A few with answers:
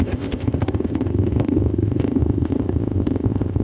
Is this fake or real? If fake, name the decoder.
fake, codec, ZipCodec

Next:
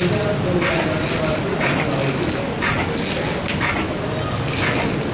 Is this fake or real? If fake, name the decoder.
real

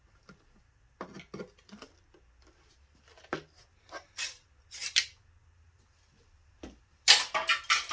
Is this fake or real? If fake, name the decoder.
real